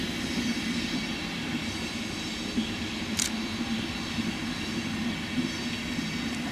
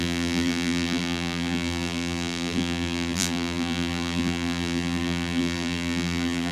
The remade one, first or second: second